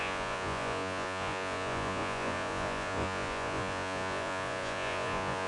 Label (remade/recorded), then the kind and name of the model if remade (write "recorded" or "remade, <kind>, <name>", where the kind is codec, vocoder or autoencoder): remade, vocoder, Vocos